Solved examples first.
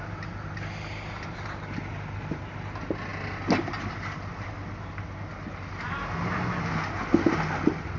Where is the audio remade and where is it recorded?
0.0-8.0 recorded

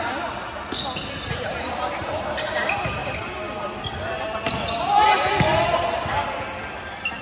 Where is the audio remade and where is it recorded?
0.0-7.2 recorded